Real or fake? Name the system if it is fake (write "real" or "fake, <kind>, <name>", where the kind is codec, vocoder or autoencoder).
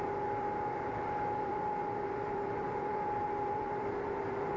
fake, vocoder, BigVGAN v2